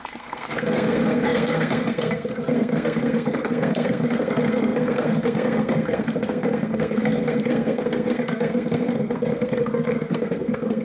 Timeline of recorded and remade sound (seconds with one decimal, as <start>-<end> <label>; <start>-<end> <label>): 0.0-10.8 remade